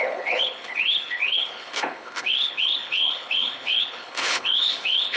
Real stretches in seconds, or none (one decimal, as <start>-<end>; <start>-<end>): none